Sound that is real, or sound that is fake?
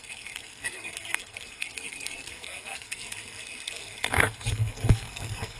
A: fake